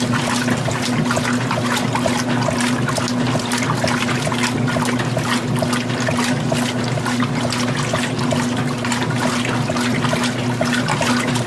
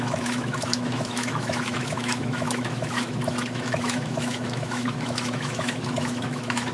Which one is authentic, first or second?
first